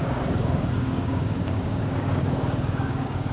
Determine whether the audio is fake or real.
fake